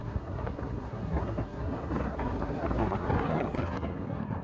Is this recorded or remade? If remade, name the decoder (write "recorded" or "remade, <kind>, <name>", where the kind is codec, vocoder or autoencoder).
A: remade, codec, SNAC